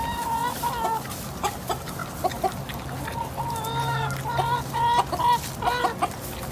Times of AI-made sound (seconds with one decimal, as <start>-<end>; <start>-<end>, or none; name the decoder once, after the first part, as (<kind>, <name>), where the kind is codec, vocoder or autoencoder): none